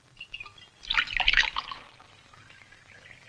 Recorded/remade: recorded